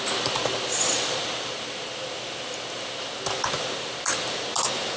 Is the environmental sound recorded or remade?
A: recorded